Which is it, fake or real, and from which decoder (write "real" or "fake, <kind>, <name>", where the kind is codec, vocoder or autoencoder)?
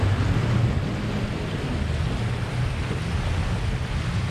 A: real